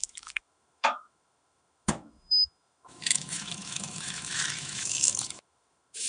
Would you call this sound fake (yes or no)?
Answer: yes